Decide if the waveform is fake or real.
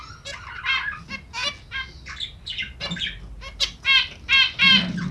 real